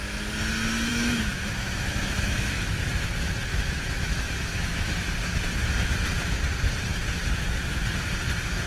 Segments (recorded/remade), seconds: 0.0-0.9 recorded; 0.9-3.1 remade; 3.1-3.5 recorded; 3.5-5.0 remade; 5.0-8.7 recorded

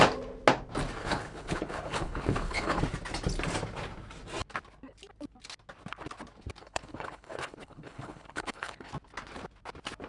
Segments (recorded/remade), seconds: 0.0-1.0 recorded; 1.0-2.8 remade; 2.8-6.6 recorded; 6.6-8.9 remade; 8.9-10.1 recorded

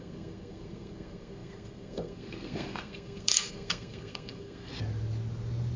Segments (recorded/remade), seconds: 0.0-4.7 remade; 4.7-5.8 recorded

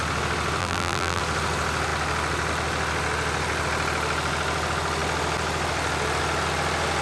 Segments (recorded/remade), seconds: 0.0-0.6 recorded; 0.6-1.2 remade; 1.2-7.0 recorded

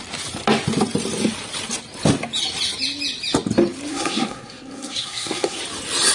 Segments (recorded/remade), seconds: 0.0-3.9 recorded; 3.9-5.6 remade; 5.6-6.1 recorded